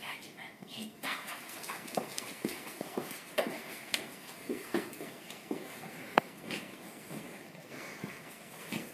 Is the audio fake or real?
fake